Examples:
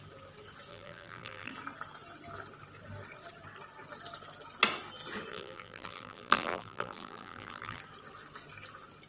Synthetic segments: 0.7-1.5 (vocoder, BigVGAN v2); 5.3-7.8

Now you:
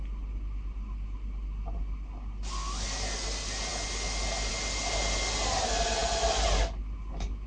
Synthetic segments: none

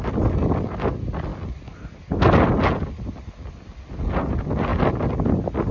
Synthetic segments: none

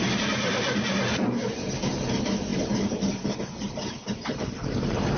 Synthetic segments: 0.0-5.2 (vocoder, BigVGAN v2)